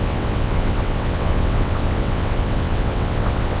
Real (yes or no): no